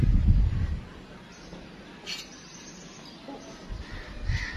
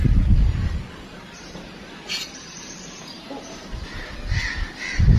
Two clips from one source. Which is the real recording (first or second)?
first